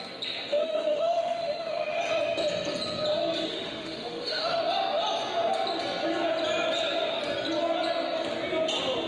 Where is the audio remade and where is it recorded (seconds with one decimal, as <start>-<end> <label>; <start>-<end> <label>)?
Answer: 0.0-0.5 recorded; 0.5-2.0 remade; 2.0-3.5 recorded; 3.5-4.6 remade; 4.6-9.1 recorded